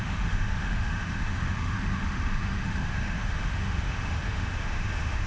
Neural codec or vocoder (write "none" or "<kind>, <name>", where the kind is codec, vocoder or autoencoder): autoencoder, DAC-VAE